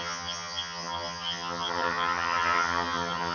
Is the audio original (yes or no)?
no